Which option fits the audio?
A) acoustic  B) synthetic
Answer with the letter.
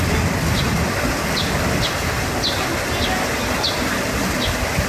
A